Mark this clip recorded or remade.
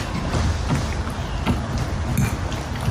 recorded